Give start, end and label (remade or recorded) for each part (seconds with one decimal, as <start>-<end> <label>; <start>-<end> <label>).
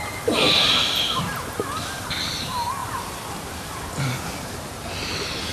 0.0-2.8 recorded; 2.8-3.7 remade; 3.7-5.5 recorded